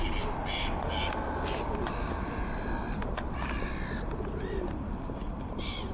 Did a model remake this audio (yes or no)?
no